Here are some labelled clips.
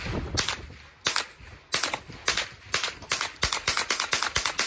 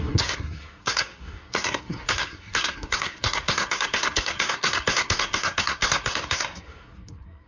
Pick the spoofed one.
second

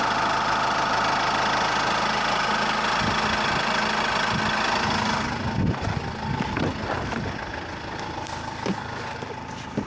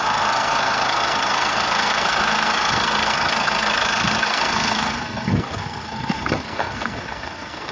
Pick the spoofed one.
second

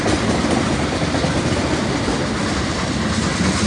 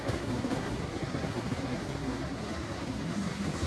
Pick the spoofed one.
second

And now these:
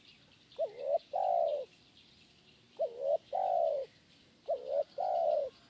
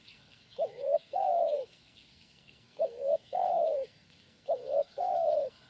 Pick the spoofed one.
second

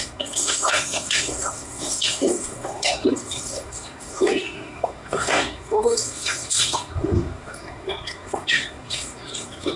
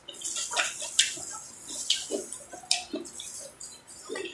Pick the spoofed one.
first